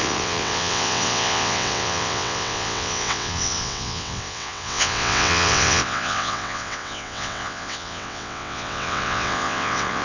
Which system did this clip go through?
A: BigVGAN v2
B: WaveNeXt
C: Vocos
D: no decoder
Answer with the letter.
B